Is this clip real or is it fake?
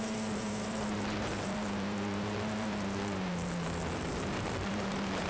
fake